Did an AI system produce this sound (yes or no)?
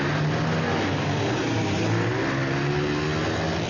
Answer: no